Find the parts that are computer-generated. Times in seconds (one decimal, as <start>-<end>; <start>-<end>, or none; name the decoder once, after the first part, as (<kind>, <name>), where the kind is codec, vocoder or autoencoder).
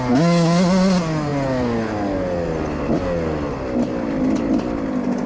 none